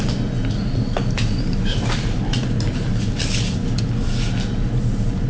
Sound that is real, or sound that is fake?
real